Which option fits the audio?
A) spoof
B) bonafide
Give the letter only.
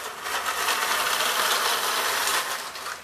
B